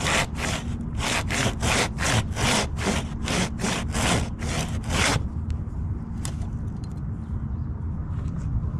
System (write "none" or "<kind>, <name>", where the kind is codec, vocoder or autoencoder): none